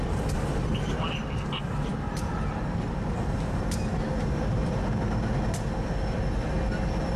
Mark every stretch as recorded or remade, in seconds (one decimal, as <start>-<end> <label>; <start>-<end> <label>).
0.0-7.2 recorded